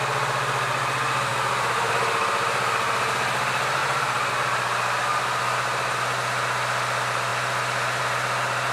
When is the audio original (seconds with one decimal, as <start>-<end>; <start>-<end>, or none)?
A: 0.0-1.3; 1.9-3.8; 4.3-8.7